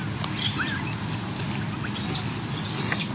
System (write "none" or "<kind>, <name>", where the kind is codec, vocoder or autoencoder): none